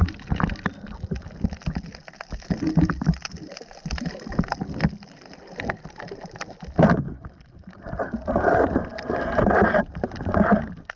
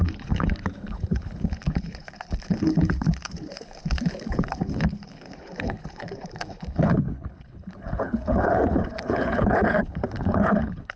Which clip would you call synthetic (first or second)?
second